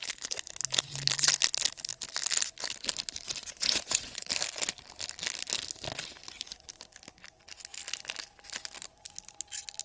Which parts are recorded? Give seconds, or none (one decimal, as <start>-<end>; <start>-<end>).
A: 0.0-3.4; 4.3-9.8

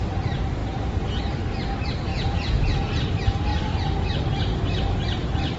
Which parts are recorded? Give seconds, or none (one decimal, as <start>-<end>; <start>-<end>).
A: 0.0-2.1; 3.1-5.6

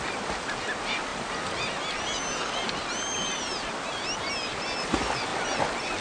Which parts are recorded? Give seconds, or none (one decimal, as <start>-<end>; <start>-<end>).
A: 0.0-6.0

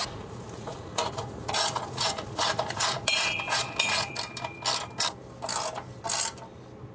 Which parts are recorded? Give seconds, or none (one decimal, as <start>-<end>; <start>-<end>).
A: 4.1-6.9

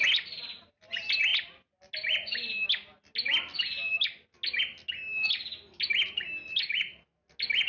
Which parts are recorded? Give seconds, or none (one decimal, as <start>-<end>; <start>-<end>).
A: 0.0-7.7

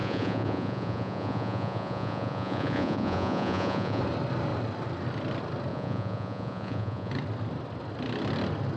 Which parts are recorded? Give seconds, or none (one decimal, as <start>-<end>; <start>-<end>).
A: 4.0-5.7; 7.1-8.8

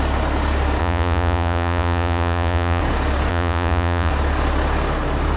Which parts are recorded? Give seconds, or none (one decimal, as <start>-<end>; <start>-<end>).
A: 0.0-0.8; 2.8-3.3; 4.1-5.4

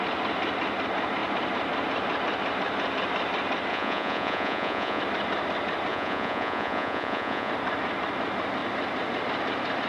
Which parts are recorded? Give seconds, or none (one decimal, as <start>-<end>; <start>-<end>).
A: 0.0-3.7; 5.0-5.9; 7.5-9.9